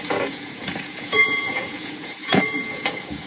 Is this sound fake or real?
fake